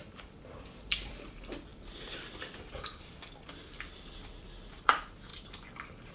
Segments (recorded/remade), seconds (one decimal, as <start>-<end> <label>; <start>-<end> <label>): 0.0-5.3 remade; 5.3-6.1 recorded

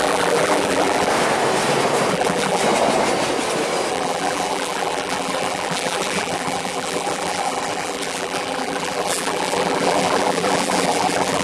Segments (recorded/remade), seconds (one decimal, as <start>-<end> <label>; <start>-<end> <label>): 0.0-1.1 remade; 1.1-2.1 recorded; 2.1-2.6 remade; 2.6-3.9 recorded; 3.9-11.4 remade

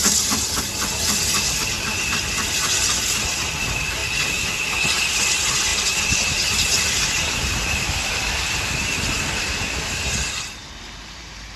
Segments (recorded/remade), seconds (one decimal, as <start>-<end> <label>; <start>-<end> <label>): 0.0-5.7 recorded; 5.7-8.1 remade; 8.1-11.6 recorded

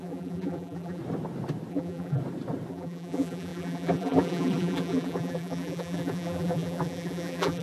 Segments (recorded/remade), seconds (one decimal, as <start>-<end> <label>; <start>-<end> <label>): 0.0-1.0 remade; 1.0-1.7 recorded; 1.7-2.2 remade; 2.2-2.7 recorded; 2.7-7.6 remade

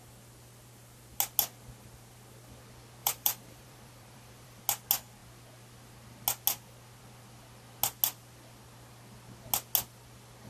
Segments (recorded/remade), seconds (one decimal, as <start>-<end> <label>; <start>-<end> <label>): 0.0-3.0 recorded; 3.0-4.6 remade; 4.6-10.5 recorded

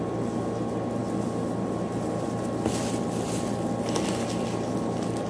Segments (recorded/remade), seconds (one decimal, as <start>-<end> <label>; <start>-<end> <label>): 0.0-5.3 recorded

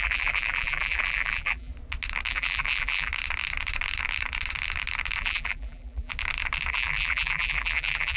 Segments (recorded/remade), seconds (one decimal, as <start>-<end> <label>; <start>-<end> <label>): 0.0-1.7 remade; 1.7-2.3 recorded; 2.3-3.1 remade; 3.1-5.2 recorded; 5.2-6.1 remade; 6.1-6.7 recorded; 6.7-8.2 remade

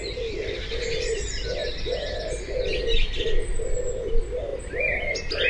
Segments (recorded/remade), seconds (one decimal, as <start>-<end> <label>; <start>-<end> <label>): 0.0-5.5 recorded